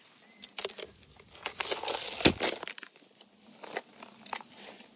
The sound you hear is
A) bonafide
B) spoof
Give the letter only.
A